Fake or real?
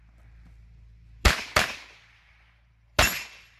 fake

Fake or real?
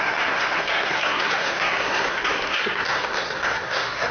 fake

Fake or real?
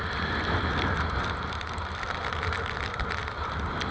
real